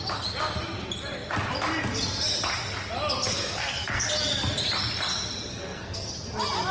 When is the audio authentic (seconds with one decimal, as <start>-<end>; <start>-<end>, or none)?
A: 0.0-3.3; 4.1-5.5; 6.1-6.7